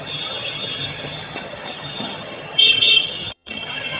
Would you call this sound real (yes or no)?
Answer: no